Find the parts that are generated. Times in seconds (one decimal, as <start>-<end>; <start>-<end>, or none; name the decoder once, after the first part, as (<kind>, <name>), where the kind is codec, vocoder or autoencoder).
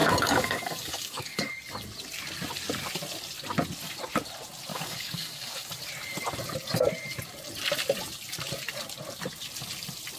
0.0-1.5 (codec, DAC); 4.7-5.7